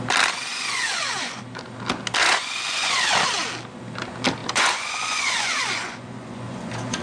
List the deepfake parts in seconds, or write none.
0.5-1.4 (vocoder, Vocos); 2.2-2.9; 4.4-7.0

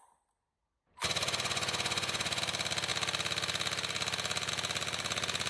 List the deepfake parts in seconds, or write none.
1.0-2.4 (vocoder, Vocos)

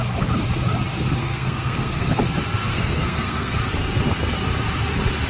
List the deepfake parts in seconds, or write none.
1.2-2.2 (codec, SNAC); 2.7-3.6

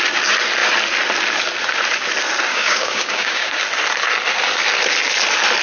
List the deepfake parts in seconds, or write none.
2.5-3.6 (codec, DAC)

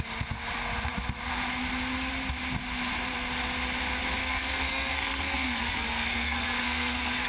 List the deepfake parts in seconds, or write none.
4.2-7.3 (codec, SNAC)